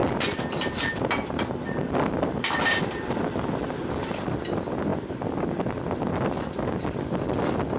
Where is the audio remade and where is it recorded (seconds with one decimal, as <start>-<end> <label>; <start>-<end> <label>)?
0.0-7.8 recorded